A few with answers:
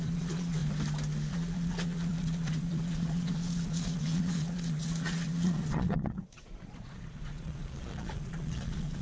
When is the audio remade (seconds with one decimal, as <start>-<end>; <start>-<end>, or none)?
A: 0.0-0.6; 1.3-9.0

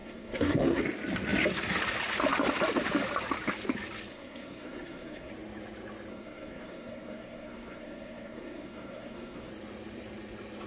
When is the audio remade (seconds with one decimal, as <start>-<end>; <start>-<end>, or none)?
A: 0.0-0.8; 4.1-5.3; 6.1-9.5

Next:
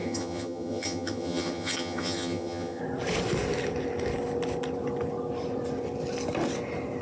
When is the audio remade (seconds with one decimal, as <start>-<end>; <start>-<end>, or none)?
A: 0.0-2.8